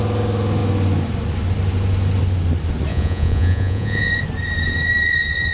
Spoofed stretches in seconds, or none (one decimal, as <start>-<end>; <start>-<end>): 2.9-4.1